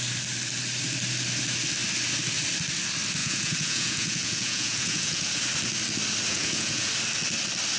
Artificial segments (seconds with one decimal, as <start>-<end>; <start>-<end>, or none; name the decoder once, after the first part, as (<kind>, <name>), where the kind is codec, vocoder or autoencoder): 3.2-5.3 (vocoder, Vocos); 6.3-6.9